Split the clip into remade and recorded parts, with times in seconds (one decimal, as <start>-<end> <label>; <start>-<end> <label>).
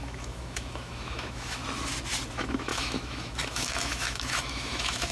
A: 0.0-1.6 remade; 1.6-2.3 recorded; 2.3-5.1 remade